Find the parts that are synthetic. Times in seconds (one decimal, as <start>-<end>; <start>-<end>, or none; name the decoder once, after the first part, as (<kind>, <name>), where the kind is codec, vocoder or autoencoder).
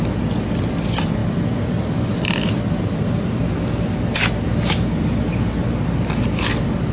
none